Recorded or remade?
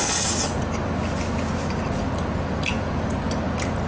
recorded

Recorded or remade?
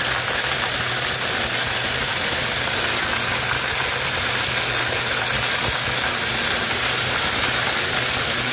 recorded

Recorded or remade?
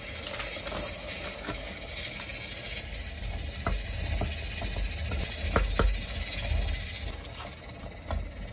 recorded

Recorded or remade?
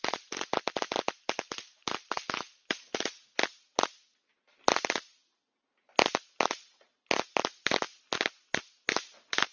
recorded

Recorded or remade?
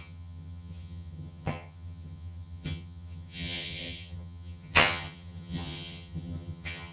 remade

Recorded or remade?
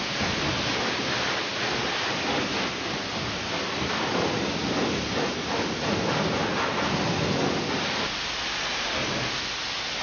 recorded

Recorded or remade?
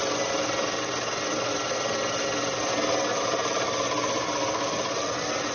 recorded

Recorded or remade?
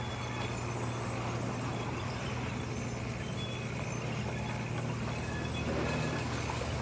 recorded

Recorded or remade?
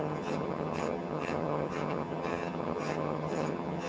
remade